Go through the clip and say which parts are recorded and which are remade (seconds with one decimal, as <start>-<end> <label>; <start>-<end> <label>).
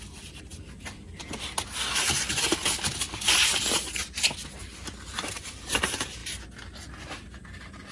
0.0-7.9 recorded